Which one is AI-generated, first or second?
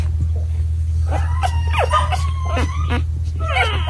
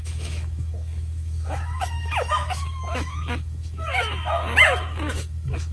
second